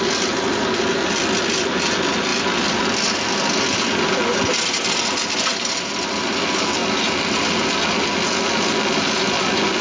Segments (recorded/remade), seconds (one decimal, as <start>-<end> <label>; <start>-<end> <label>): 0.0-9.8 recorded